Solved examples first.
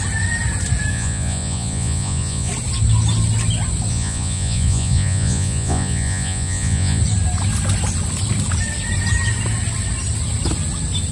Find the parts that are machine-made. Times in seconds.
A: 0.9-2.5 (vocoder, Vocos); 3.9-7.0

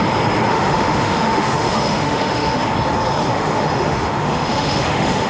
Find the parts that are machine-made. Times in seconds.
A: 0.5-2.6 (autoencoder, DAC-VAE); 3.3-5.3

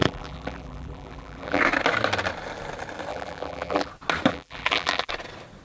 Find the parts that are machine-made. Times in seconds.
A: 0.0-1.6 (vocoder, BigVGAN v2); 3.1-3.9; 4.3-5.1